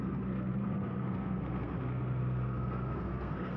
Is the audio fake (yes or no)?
yes